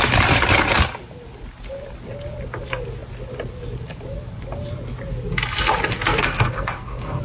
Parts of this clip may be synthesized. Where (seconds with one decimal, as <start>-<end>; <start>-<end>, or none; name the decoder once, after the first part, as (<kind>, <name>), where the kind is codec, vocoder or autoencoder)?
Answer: 5.9-7.2 (codec, SNAC)